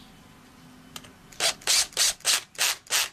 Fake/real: real